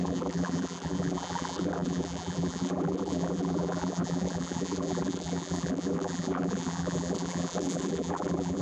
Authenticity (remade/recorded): remade